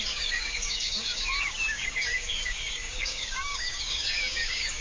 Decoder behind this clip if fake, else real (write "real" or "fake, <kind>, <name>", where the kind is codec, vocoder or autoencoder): fake, codec, DAC